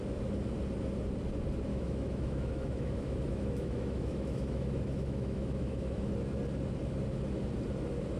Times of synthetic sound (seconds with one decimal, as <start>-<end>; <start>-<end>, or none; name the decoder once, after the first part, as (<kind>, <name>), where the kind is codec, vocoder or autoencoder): 1.7-6.1 (autoencoder, DAC-VAE)